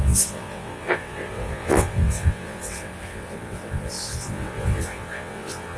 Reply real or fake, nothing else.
fake